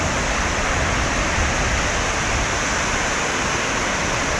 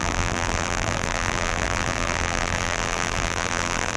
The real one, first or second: first